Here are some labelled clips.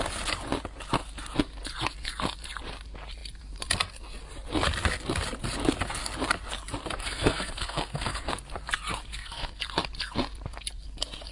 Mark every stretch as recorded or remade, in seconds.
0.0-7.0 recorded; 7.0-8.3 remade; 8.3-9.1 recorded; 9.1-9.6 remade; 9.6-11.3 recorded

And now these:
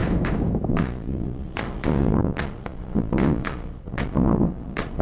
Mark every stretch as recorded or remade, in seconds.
0.0-0.7 recorded; 0.7-5.0 remade

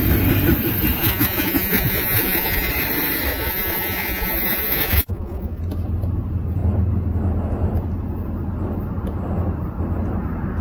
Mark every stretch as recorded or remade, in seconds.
0.0-1.0 recorded; 1.0-2.7 remade; 2.7-3.3 recorded; 3.3-5.6 remade; 5.6-10.6 recorded